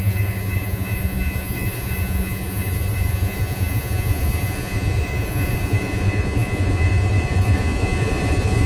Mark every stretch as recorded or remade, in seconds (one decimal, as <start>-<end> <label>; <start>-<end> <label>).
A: 0.0-8.7 remade